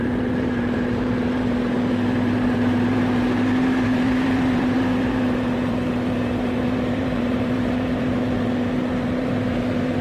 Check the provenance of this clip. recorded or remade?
remade